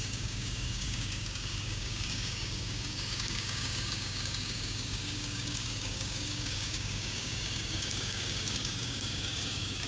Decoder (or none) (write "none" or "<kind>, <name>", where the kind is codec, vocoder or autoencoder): codec, DAC